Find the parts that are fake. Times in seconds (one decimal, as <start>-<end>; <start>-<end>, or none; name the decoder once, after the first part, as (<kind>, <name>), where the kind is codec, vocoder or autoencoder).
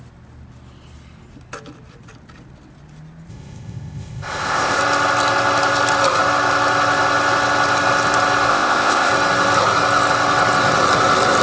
3.3-4.8 (codec, ZipCodec); 8.5-9.1